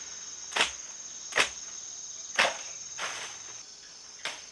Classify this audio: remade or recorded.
recorded